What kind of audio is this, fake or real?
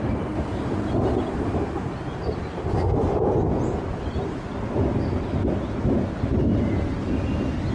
real